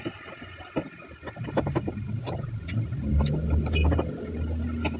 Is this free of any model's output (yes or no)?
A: yes